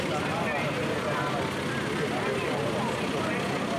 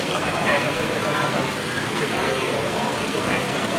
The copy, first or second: second